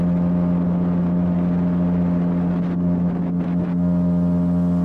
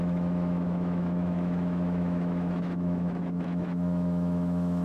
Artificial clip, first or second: second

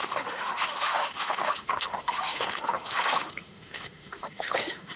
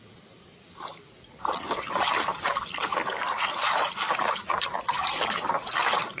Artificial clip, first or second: first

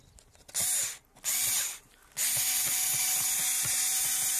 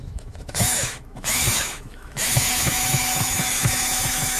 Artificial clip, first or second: second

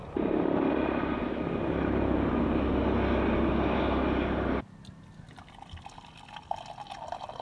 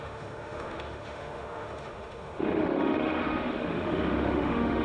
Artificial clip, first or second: second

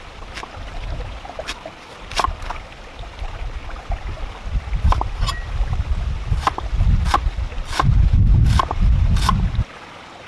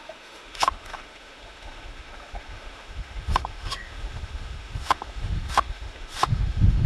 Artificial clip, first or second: second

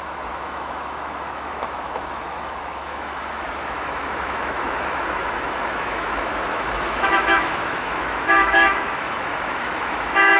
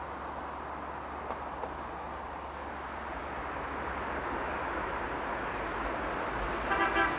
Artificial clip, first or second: first